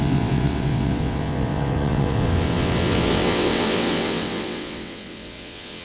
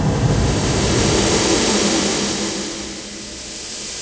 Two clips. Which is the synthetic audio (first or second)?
first